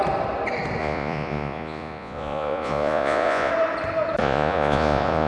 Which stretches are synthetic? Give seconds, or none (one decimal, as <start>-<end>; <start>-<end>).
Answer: 0.8-3.5; 4.2-5.3